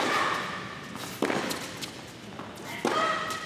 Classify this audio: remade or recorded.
recorded